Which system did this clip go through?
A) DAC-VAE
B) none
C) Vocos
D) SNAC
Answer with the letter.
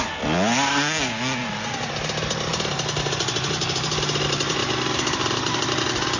B